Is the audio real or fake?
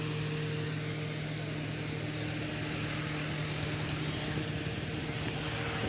real